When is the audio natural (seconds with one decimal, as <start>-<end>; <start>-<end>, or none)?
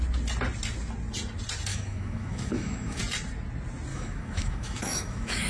0.0-1.7; 3.0-3.9